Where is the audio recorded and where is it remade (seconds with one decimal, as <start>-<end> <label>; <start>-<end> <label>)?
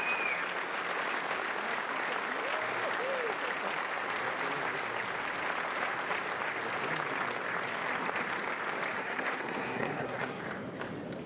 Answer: 0.0-9.0 recorded; 9.0-10.4 remade; 10.4-11.3 recorded